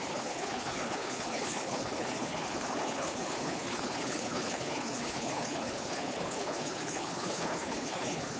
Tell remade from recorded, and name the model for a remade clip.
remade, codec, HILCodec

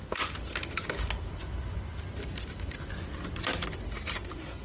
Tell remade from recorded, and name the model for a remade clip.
recorded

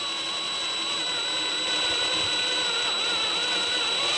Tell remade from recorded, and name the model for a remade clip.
recorded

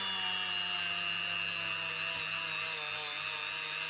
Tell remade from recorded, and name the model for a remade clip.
recorded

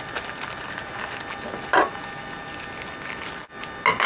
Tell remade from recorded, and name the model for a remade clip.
recorded